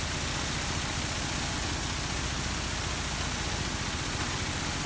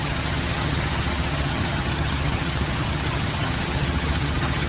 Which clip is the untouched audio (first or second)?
first